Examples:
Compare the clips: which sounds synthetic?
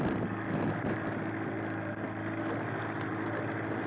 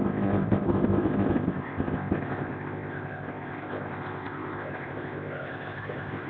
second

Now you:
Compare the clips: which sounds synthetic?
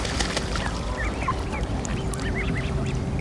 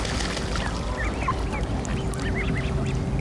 first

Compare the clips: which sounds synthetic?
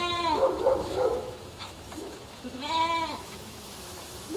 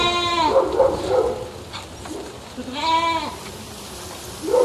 first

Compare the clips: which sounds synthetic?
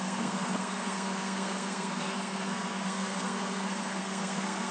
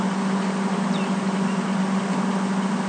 first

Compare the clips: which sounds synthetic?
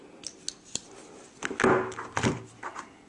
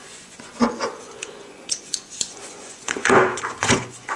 second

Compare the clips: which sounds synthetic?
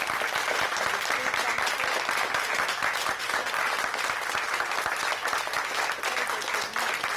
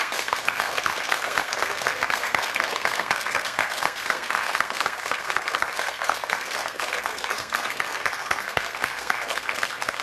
second